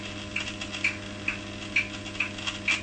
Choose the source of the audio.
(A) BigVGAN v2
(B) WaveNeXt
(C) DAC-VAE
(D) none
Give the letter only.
D